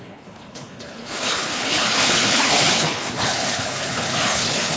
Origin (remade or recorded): remade